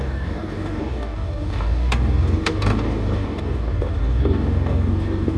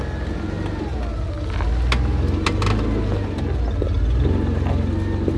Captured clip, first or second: second